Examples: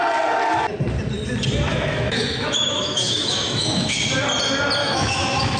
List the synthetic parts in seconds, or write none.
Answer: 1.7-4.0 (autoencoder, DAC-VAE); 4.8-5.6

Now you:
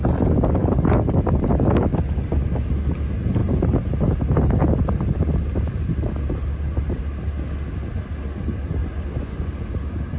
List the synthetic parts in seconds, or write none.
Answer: 8.8-9.5 (vocoder, Vocos)